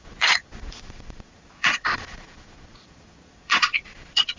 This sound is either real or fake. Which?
fake